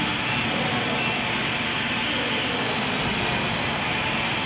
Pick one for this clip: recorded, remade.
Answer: recorded